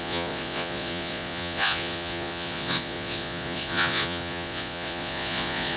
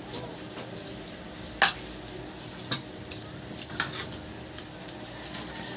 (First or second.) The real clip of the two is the second